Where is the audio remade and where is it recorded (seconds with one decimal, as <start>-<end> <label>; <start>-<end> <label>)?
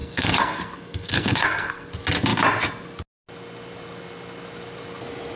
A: 0.0-1.9 remade; 1.9-5.4 recorded